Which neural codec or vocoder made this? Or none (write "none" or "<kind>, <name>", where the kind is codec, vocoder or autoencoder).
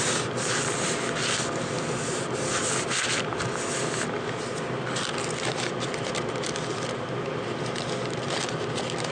none